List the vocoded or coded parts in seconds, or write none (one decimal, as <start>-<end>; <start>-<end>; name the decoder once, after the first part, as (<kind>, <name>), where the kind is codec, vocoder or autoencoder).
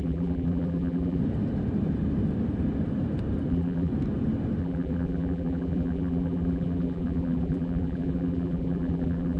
0.0-1.2 (vocoder, BigVGAN v2); 3.5-3.9; 4.6-9.4